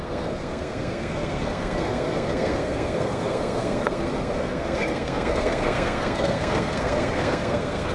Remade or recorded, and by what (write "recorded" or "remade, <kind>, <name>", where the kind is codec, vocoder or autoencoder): remade, codec, SNAC